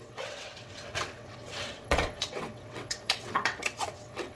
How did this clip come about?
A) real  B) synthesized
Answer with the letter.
B